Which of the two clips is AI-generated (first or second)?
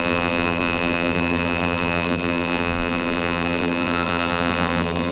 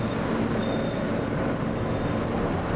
first